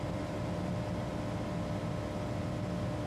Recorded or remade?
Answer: recorded